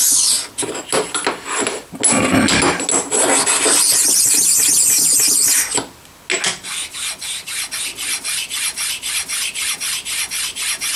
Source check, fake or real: real